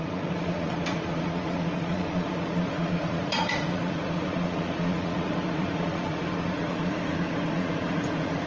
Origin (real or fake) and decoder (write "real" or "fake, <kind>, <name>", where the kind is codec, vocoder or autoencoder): fake, vocoder, Vocos